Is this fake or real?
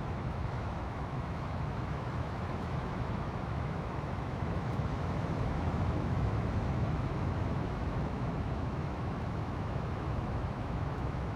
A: fake